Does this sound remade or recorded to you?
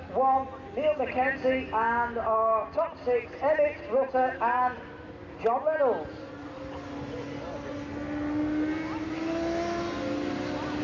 recorded